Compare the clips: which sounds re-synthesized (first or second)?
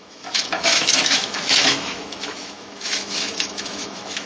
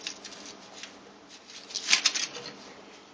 first